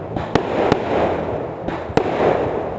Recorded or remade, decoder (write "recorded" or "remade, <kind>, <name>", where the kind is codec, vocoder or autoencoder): recorded